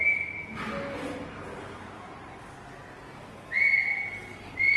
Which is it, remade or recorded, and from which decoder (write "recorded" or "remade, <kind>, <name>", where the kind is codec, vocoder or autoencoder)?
recorded